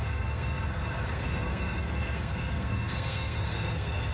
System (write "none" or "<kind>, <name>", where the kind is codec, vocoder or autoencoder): codec, SNAC